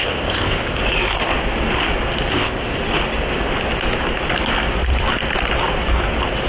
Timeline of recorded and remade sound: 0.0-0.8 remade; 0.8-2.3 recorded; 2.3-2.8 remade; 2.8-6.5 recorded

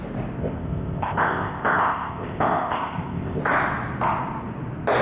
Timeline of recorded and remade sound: 0.0-0.4 recorded; 0.4-3.4 remade; 3.4-5.0 recorded

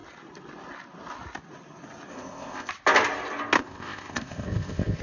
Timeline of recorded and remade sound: 0.0-2.1 recorded; 2.1-2.7 remade; 2.7-3.6 recorded; 3.6-5.0 remade

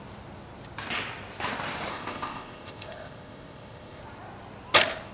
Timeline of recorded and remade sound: 0.0-1.9 recorded; 1.9-4.0 remade; 4.0-5.1 recorded

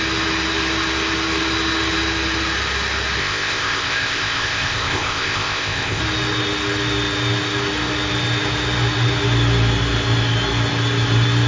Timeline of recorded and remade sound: 0.0-3.2 recorded; 3.2-6.0 remade; 6.0-11.5 recorded

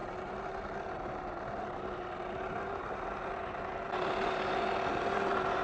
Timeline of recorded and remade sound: 0.0-5.6 recorded

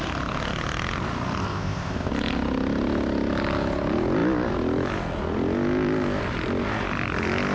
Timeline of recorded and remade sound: 0.0-1.4 recorded; 1.4-2.1 remade; 2.1-7.5 recorded